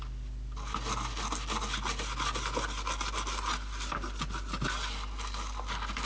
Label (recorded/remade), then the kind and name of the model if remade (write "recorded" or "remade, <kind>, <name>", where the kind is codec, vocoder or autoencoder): recorded